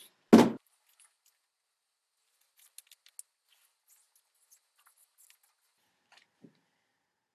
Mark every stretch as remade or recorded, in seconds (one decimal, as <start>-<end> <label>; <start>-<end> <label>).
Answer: 0.0-7.3 recorded